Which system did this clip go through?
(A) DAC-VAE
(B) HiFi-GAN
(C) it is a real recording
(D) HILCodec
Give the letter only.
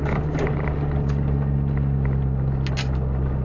C